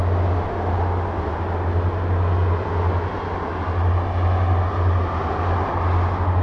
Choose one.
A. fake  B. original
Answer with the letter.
B